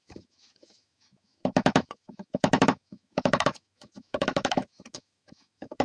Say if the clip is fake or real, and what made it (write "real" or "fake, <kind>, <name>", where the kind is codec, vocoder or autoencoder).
fake, autoencoder, DAC-VAE